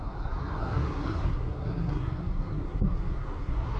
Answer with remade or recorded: remade